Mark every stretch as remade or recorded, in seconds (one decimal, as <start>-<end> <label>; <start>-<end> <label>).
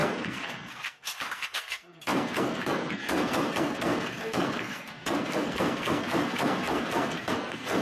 0.0-7.8 remade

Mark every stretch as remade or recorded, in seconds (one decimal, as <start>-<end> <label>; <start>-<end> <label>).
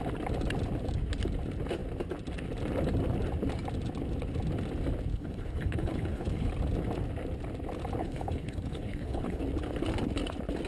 0.0-5.1 recorded; 5.1-6.5 remade; 6.5-8.0 recorded; 8.0-9.4 remade; 9.4-10.7 recorded